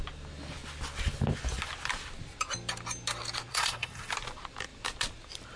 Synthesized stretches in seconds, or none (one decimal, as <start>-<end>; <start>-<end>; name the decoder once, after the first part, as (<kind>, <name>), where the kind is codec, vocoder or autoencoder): 3.5-4.1 (codec, SNAC)